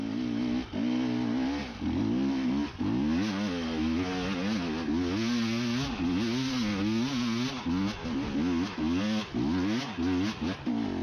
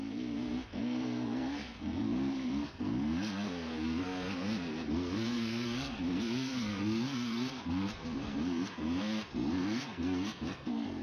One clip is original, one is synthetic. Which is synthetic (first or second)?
second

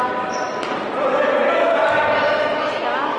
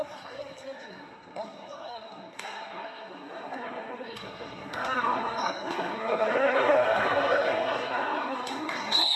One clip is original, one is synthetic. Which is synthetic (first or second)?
second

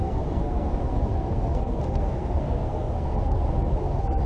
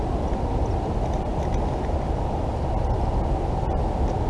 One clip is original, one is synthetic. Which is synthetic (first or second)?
first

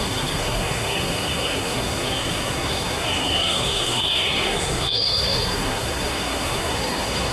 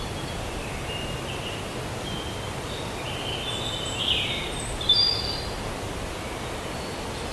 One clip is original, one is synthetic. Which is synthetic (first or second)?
first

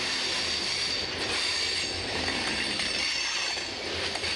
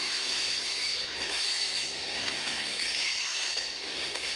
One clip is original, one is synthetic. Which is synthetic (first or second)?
second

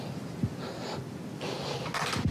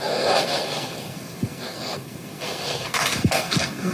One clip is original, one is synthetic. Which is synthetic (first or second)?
second